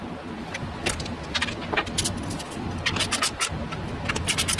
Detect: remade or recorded recorded